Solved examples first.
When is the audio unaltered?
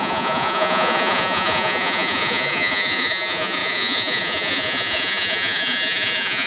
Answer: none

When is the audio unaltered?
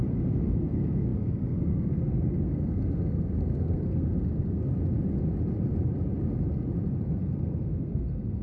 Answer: 0.0-0.6; 4.7-7.0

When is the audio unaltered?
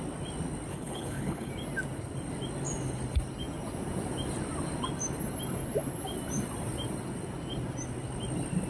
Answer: 0.0-0.7; 1.5-8.7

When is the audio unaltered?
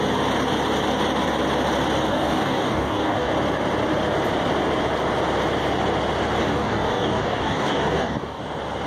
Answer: 0.0-2.1; 3.3-6.4; 8.4-8.9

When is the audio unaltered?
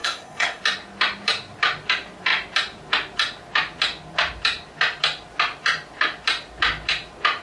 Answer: 0.6-7.4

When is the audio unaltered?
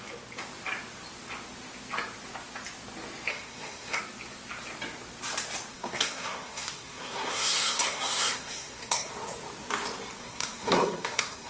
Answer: 0.0-3.3; 4.0-5.7; 9.1-10.2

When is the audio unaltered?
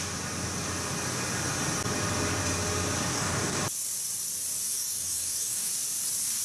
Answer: 0.0-3.1; 3.6-4.6; 5.7-6.4